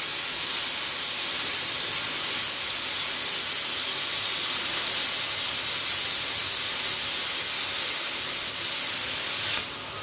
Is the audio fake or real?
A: real